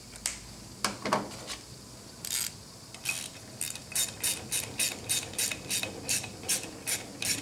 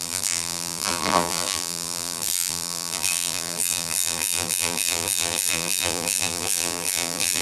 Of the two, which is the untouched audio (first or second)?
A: first